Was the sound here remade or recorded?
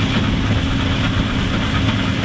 recorded